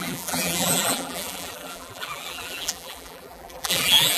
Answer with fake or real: fake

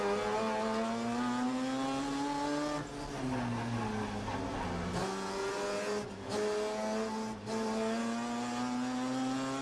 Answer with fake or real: real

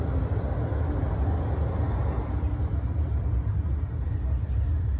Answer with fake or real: real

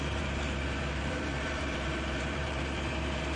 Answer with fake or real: fake